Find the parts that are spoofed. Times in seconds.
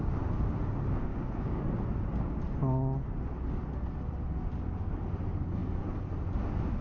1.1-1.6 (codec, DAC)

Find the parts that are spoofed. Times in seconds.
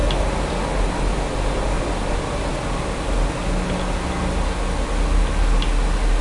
1.9-2.5 (vocoder, BigVGAN v2)